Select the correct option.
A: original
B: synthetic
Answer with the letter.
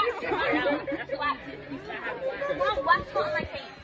A